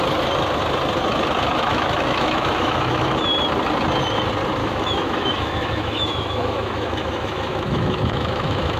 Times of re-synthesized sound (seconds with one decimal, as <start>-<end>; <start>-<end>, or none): 1.5-3.2; 4.6-8.8